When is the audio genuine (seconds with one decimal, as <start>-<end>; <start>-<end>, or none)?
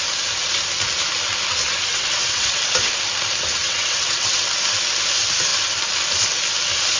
0.0-1.9; 2.6-3.6; 4.4-7.0